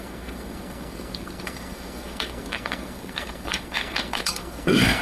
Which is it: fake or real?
fake